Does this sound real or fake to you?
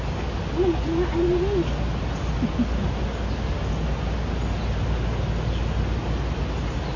real